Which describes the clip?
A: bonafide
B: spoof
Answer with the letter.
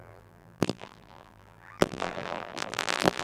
B